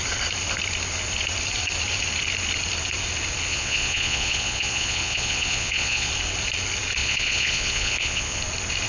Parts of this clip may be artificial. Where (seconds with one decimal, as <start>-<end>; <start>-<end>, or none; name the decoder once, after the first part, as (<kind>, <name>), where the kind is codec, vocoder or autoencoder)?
3.5-6.1 (vocoder, Vocos); 7.0-8.4